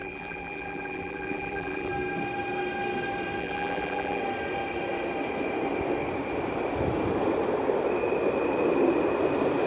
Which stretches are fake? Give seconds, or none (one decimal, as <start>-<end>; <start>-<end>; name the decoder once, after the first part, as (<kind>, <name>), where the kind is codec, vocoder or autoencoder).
0.0-1.9 (vocoder, BigVGAN v2); 3.4-4.2